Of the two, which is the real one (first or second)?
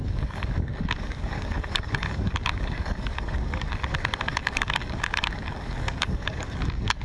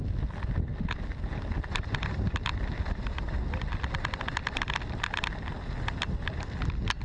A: second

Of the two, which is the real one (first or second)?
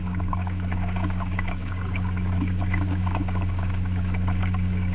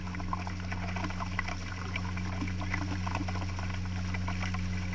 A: second